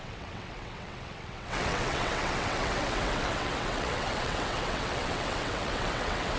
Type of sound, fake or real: fake